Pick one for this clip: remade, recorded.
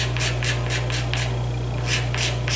recorded